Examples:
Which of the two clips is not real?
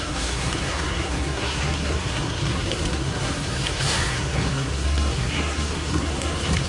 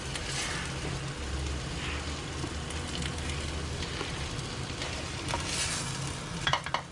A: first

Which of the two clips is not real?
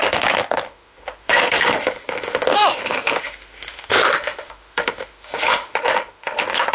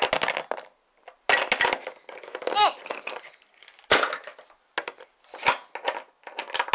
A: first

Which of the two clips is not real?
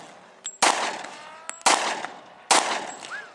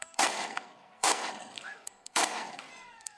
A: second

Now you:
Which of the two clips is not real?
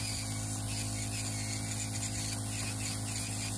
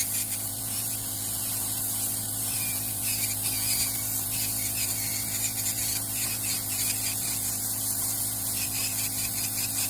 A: second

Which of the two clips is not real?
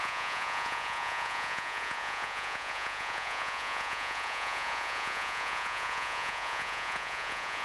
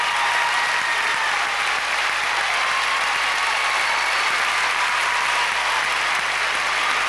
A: first